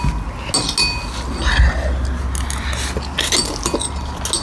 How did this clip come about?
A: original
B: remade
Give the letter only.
A